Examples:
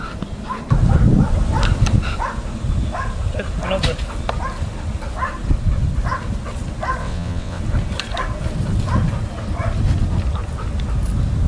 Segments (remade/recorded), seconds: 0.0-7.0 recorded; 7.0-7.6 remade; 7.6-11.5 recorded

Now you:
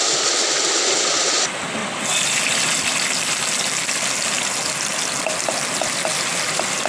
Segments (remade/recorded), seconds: 0.0-6.9 recorded

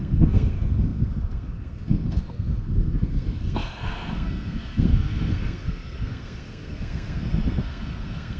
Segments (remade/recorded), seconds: 0.0-8.4 remade